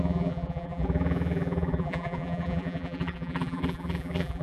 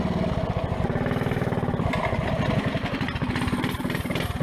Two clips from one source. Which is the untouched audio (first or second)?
second